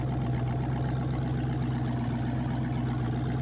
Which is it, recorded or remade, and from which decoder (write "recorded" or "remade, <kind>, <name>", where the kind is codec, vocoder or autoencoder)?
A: recorded